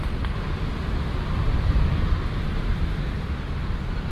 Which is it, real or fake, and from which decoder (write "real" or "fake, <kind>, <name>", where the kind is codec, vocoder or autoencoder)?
real